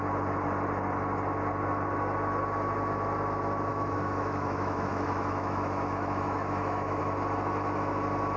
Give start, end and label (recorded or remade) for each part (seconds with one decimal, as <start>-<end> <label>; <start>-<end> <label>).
0.0-3.7 recorded; 3.7-7.0 remade; 7.0-8.4 recorded